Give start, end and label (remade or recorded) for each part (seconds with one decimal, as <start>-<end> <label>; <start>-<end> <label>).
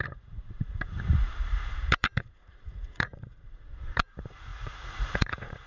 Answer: 0.0-5.7 remade